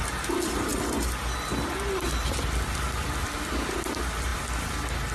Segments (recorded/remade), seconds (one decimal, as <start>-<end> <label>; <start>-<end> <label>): 0.0-5.1 recorded